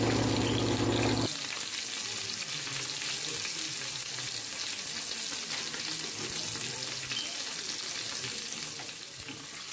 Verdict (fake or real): real